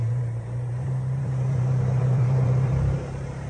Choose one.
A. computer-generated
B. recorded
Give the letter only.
A